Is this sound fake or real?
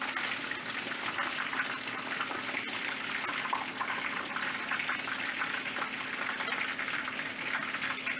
real